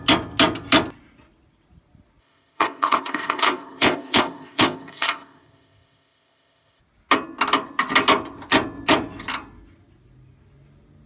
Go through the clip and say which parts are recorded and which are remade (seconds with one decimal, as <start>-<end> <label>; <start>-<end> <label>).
0.0-2.2 recorded; 2.2-6.8 remade; 6.8-11.1 recorded